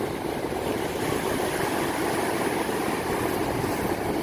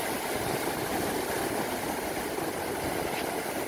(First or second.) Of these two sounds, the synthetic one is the first